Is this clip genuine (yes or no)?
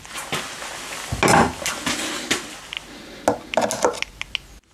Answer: yes